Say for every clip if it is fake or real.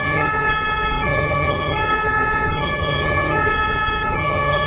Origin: fake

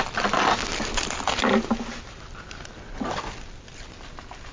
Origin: real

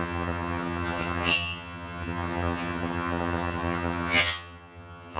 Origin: fake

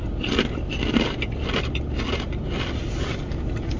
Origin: real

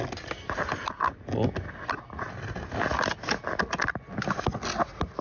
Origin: real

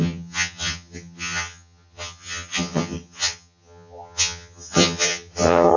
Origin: fake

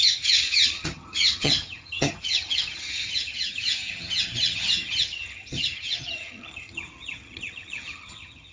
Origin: fake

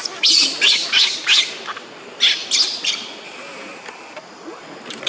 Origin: real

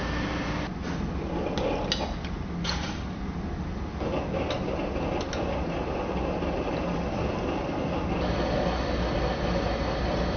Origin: real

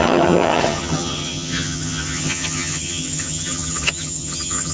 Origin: fake